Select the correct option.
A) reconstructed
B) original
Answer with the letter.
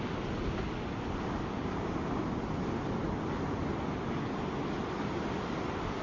B